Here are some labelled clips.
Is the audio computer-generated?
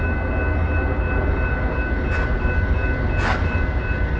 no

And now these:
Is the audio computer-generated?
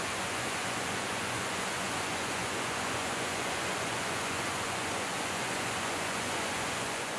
yes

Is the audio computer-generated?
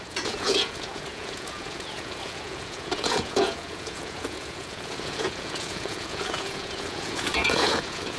yes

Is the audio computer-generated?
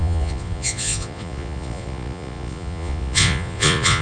yes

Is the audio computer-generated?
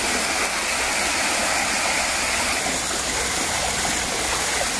no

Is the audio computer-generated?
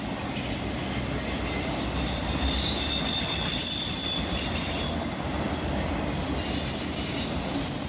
no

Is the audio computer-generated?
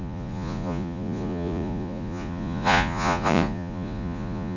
yes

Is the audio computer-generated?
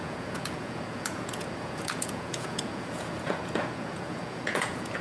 yes